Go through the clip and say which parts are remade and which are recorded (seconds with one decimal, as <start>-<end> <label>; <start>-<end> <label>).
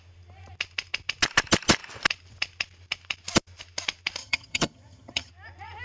0.0-4.2 recorded; 4.2-5.3 remade; 5.3-5.8 recorded